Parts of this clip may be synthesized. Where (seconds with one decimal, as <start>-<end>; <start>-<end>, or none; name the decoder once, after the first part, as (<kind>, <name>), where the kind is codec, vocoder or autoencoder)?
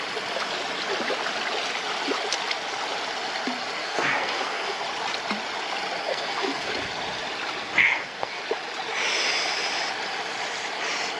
3.8-4.8 (codec, SNAC); 6.0-6.7; 7.6-8.4